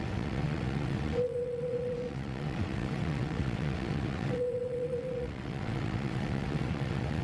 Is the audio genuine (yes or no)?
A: no